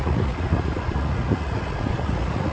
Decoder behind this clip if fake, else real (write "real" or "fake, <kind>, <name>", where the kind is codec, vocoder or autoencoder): fake, vocoder, Vocos